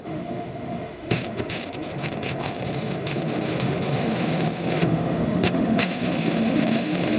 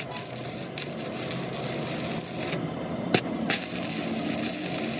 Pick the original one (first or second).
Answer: second